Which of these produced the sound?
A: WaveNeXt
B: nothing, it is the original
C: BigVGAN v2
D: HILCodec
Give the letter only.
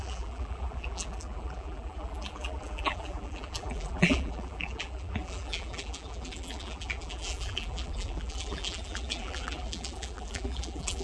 C